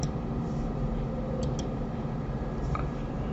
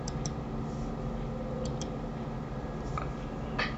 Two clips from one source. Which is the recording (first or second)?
second